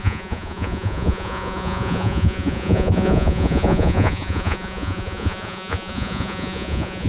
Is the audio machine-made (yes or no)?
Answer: yes